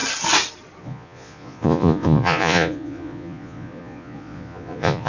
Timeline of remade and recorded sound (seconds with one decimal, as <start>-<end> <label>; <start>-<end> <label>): 0.0-0.8 recorded; 0.8-5.1 remade